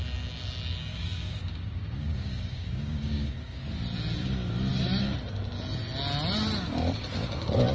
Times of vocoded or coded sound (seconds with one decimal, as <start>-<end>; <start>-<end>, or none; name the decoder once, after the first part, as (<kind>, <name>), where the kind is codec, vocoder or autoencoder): 0.9-3.6 (codec, DAC)

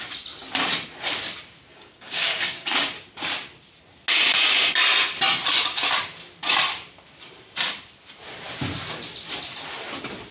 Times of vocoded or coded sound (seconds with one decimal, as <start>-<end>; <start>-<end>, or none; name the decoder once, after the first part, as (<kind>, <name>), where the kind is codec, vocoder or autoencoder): 1.7-2.9 (codec, DAC)

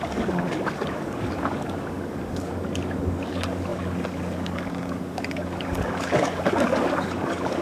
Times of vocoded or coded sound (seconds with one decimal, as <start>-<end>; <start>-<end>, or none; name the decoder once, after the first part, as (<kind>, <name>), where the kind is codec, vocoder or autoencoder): 0.0-7.6 (codec, DAC)

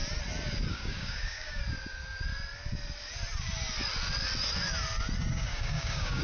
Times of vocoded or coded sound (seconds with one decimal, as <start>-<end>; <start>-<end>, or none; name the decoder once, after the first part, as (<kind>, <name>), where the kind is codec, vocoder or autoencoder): 0.7-1.6 (codec, DAC); 5.3-6.2